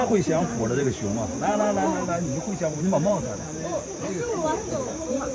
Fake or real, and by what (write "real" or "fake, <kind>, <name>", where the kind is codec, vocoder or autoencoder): fake, vocoder, BigVGAN v2